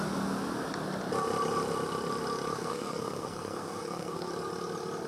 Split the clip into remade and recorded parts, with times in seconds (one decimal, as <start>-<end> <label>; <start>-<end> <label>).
0.0-2.5 recorded; 2.5-4.3 remade; 4.3-5.1 recorded